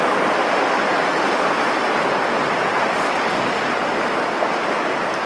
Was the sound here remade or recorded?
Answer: recorded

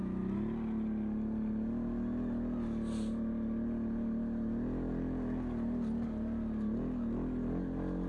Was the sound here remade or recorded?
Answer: recorded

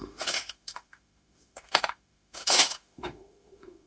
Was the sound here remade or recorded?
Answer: remade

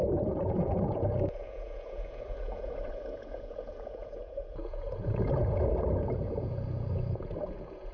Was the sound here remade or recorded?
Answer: remade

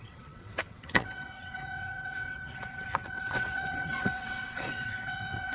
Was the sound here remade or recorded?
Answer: remade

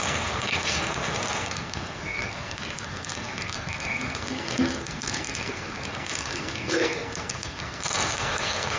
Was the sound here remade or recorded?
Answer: remade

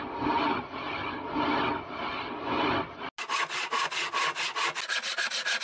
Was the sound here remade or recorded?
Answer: recorded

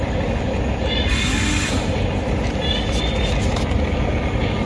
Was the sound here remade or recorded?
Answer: recorded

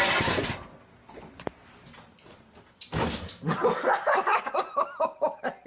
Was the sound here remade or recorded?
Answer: recorded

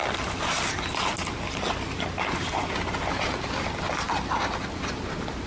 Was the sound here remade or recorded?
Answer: recorded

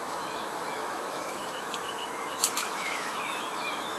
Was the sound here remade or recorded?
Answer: remade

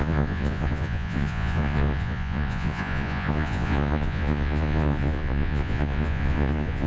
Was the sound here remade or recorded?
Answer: remade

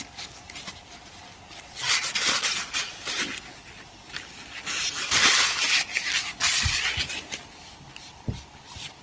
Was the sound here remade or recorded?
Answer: recorded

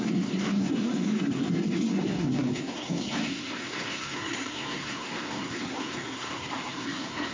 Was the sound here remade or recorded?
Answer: remade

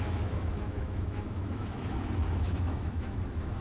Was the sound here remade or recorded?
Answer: remade